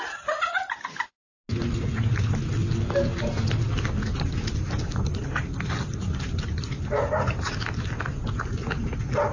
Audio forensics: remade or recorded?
recorded